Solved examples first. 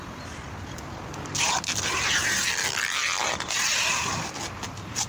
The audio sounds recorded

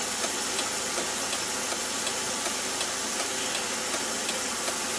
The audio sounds recorded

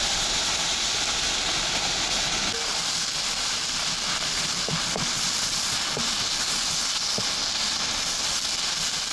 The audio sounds recorded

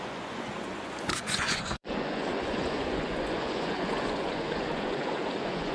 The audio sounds remade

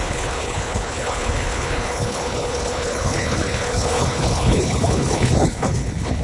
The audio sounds remade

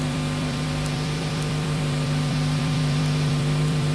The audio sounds remade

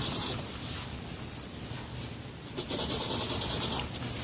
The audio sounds recorded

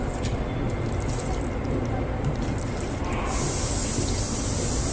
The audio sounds recorded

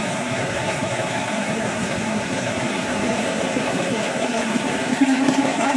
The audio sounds remade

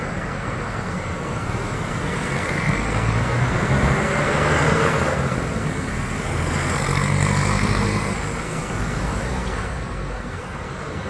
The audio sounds remade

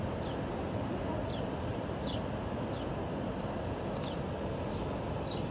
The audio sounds recorded